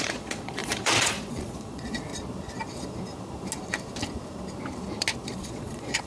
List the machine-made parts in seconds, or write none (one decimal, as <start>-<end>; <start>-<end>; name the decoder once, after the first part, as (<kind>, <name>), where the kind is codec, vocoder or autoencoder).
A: 0.0-2.1 (vocoder, Vocos); 5.2-6.1